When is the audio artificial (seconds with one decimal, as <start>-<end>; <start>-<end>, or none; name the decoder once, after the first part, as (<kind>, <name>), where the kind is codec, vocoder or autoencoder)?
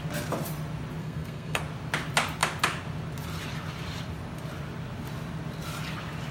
1.0-1.6 (codec, SNAC)